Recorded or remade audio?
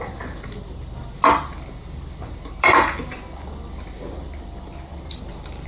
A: recorded